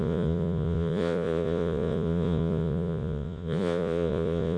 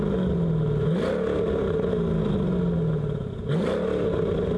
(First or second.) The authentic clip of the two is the second